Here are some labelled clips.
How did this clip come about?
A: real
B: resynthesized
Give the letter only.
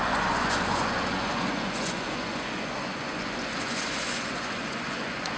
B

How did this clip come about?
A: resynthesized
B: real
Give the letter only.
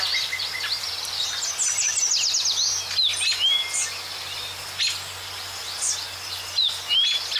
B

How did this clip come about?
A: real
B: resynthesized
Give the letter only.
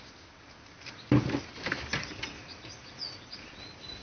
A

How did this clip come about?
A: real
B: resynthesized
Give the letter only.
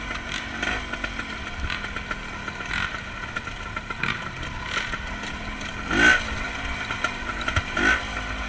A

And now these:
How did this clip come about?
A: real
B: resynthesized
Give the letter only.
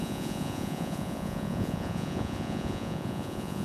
B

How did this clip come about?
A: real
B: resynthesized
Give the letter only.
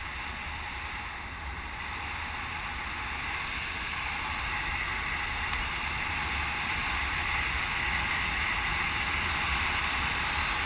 A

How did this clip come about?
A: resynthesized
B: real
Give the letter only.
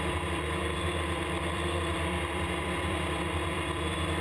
A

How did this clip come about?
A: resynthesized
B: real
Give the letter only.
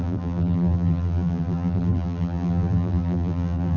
A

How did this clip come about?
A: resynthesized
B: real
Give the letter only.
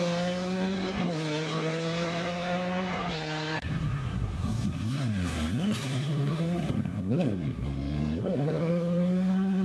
A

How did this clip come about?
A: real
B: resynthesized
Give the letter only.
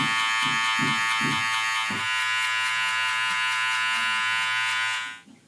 A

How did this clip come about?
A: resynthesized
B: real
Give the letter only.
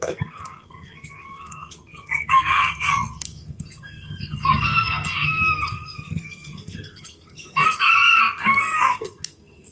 A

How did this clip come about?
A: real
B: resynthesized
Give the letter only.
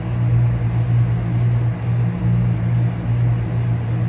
A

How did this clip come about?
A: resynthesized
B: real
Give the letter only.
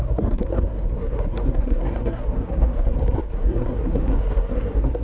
A